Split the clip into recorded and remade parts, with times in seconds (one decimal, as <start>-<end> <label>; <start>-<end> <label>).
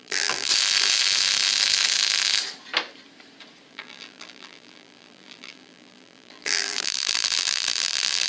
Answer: 0.0-0.5 remade; 0.5-3.7 recorded; 3.7-8.3 remade